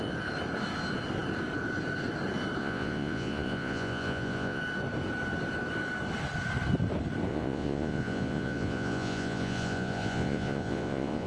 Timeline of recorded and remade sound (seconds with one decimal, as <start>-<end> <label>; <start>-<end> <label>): 0.0-2.6 recorded; 2.6-4.6 remade; 4.6-7.3 recorded; 7.3-11.3 remade